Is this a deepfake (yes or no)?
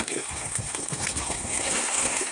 yes